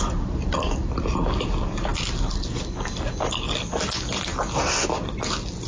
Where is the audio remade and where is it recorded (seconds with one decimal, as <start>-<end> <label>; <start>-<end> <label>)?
0.0-5.7 recorded